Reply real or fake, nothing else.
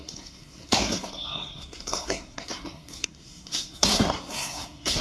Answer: fake